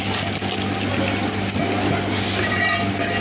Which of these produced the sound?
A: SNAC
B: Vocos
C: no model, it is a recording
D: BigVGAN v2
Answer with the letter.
C